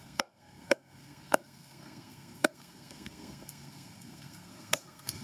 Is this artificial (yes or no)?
yes